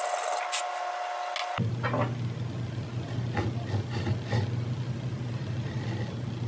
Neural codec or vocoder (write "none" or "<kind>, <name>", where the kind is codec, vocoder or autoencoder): none